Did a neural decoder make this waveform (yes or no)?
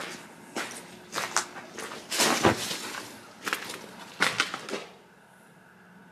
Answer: no